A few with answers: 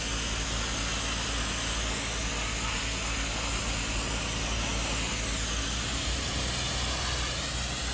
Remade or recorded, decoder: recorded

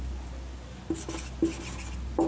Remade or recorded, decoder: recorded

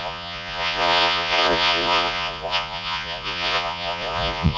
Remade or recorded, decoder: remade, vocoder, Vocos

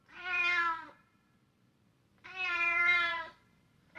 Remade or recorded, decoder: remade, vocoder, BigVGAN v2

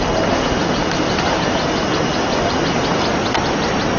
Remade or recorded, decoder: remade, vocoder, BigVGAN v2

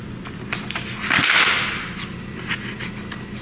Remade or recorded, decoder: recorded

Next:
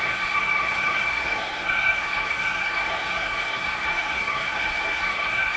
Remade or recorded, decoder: remade, codec, SNAC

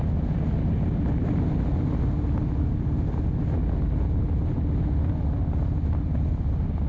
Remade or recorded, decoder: recorded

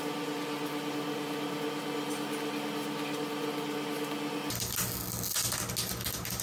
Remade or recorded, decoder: recorded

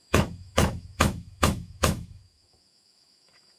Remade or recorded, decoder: remade, autoencoder, DAC-VAE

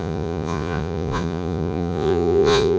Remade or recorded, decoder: remade, vocoder, Vocos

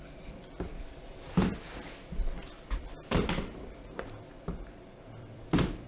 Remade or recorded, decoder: remade, vocoder, BigVGAN v2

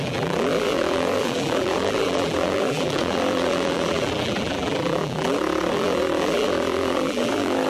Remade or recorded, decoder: remade, vocoder, BigVGAN v2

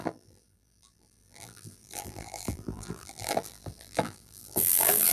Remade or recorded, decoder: remade, vocoder, BigVGAN v2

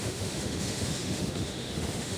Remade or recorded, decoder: remade, autoencoder, DAC-VAE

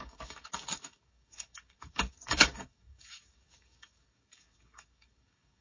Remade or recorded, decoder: remade, codec, DAC